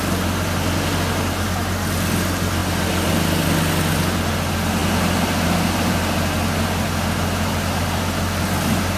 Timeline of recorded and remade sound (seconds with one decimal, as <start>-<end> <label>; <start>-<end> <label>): 0.0-9.0 recorded